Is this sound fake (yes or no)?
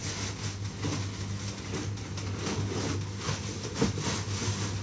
no